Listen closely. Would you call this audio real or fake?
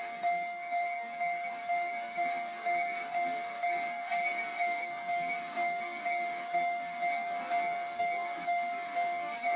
fake